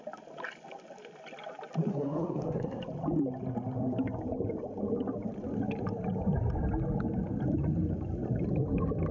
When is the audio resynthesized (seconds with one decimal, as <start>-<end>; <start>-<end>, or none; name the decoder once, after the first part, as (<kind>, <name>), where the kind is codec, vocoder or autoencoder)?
1.9-2.8 (codec, SNAC)